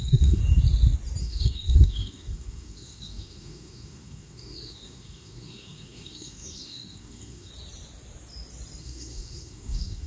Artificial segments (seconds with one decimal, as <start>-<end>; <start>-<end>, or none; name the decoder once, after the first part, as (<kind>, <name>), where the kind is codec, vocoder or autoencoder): 0.0-0.4 (codec, SNAC); 1.2-7.5; 8.8-10.1